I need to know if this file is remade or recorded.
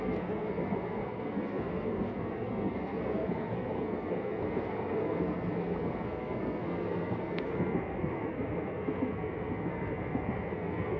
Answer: remade